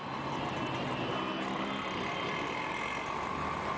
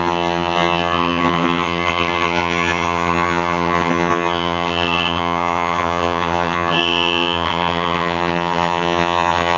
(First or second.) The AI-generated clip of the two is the second